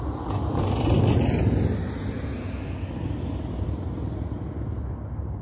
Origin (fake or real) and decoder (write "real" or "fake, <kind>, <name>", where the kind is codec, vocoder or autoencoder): real